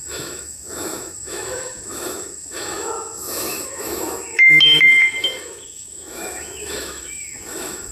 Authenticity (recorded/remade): remade